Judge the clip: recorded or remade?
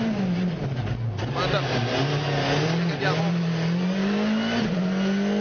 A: recorded